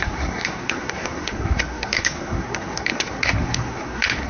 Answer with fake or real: fake